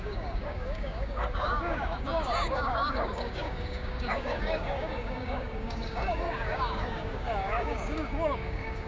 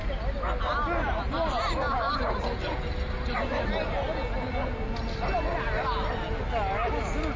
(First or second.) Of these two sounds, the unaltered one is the second